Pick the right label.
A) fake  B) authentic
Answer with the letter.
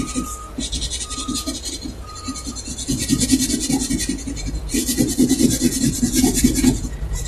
A